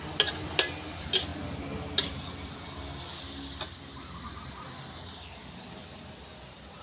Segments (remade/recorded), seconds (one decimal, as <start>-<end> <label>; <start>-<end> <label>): 0.0-6.8 recorded